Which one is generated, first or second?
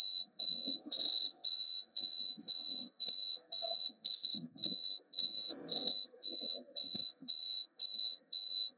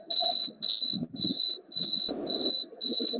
first